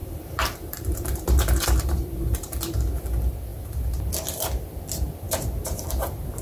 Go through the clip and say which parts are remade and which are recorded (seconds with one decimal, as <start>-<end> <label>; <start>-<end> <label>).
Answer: 0.0-2.6 remade; 2.6-6.4 recorded